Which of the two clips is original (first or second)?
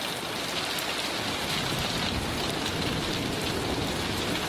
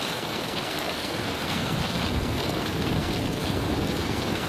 first